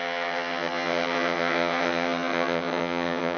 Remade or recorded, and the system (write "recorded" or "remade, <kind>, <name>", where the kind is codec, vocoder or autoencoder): remade, vocoder, HiFi-GAN